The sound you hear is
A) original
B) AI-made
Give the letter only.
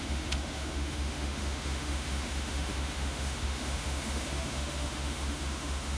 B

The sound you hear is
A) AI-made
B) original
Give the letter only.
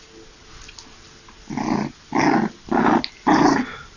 B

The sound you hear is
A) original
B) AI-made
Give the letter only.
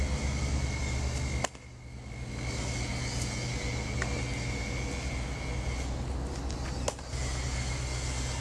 A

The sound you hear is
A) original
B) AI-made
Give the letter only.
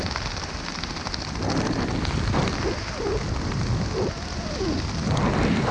A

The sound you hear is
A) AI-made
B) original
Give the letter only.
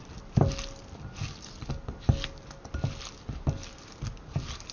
B